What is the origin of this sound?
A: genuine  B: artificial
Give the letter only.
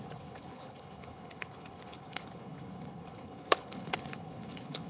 B